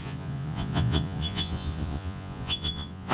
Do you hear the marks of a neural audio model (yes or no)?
yes